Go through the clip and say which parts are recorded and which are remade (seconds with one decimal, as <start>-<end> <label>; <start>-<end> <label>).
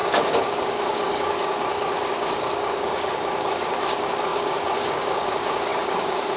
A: 0.0-6.4 remade